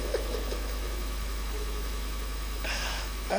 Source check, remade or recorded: remade